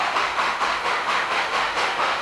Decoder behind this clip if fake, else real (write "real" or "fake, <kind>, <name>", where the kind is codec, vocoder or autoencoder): fake, autoencoder, DAC-VAE